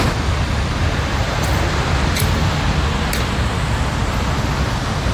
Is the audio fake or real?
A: real